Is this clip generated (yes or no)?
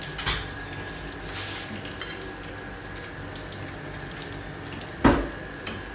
no